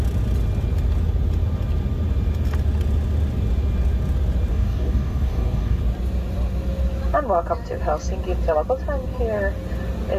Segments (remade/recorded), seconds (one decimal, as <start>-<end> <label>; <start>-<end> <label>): 0.0-4.5 recorded; 4.5-5.8 remade; 5.8-10.2 recorded